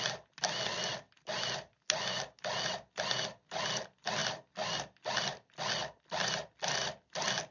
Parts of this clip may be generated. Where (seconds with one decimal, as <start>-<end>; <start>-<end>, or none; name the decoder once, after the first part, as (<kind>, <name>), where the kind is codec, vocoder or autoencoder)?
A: none